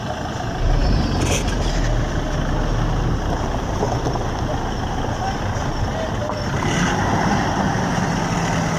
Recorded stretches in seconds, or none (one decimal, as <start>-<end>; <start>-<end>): 0.0-0.8; 1.7-8.8